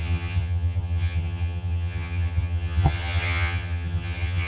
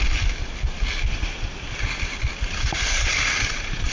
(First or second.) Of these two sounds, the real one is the second